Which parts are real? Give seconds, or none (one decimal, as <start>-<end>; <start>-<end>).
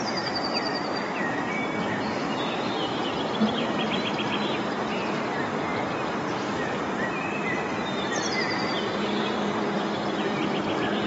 none